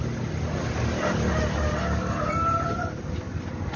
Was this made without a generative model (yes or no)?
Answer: yes